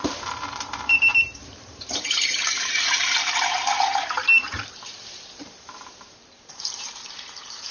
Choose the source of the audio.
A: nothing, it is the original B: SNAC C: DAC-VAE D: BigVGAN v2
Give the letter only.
D